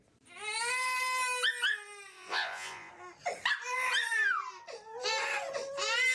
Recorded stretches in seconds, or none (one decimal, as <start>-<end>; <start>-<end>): 0.0-2.1; 2.9-6.1